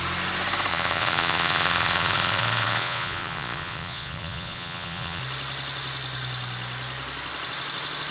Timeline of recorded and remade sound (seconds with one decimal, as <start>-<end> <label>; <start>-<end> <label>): 0.0-0.7 recorded; 0.7-5.2 remade; 5.2-8.1 recorded